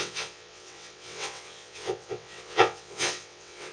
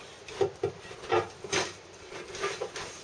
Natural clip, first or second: second